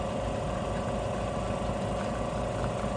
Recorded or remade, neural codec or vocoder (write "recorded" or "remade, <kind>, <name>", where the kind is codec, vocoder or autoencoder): recorded